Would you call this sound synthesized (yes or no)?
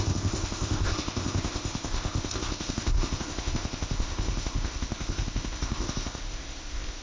yes